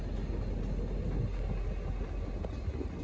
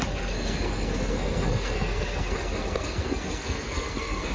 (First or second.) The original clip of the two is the first